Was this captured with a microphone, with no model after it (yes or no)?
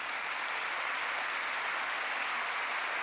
yes